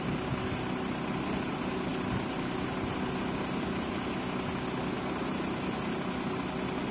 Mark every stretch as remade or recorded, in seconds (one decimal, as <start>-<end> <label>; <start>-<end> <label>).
0.0-6.9 recorded